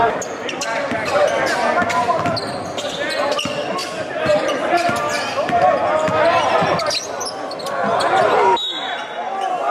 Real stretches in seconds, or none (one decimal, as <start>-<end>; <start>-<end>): 0.0-3.8; 4.7-9.7